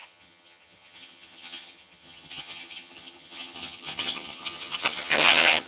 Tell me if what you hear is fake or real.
fake